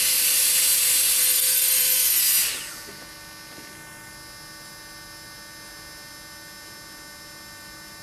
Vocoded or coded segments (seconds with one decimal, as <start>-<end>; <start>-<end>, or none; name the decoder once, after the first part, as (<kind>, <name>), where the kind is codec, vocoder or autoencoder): 1.2-2.2 (codec, SNAC)